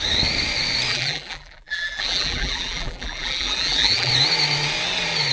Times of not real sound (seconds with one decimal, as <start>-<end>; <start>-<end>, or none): 0.9-4.1